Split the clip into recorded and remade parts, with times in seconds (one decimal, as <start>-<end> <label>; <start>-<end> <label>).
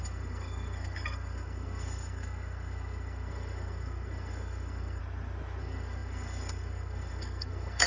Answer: 0.0-5.0 remade; 5.0-5.6 recorded; 5.6-7.9 remade